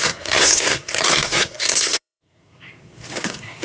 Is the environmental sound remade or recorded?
remade